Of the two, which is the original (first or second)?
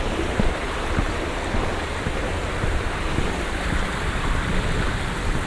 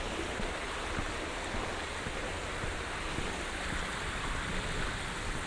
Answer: second